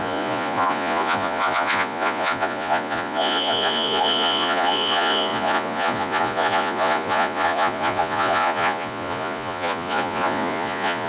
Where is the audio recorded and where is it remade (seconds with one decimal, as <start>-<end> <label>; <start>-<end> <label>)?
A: 0.0-11.1 remade